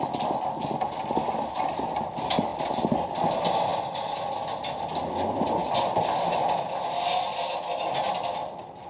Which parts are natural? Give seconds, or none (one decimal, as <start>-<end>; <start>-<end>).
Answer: 0.0-8.9